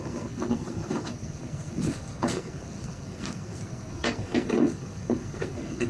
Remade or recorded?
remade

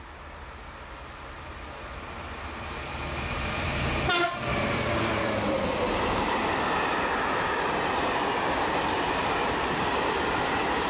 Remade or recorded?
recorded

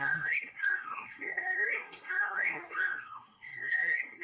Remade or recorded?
remade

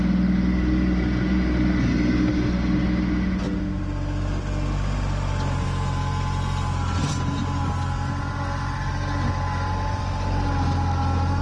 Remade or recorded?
recorded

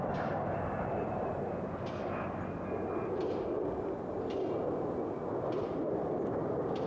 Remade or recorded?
recorded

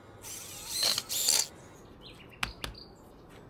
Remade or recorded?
recorded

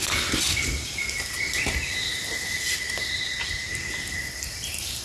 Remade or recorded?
recorded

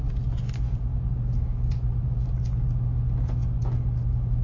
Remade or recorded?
recorded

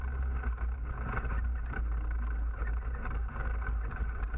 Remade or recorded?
recorded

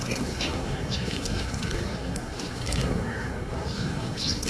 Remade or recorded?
remade